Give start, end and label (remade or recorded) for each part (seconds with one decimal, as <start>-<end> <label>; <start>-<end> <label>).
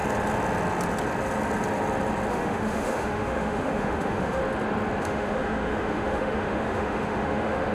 0.0-2.3 recorded; 2.3-4.4 remade; 4.4-5.0 recorded; 5.0-7.7 remade